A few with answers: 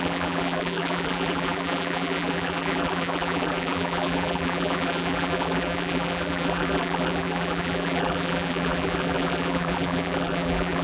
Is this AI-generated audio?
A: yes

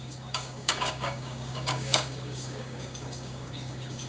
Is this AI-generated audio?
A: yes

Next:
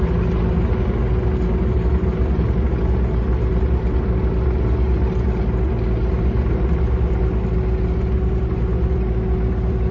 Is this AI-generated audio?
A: no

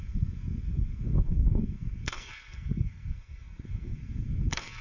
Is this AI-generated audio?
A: yes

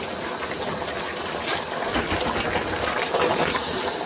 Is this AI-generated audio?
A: no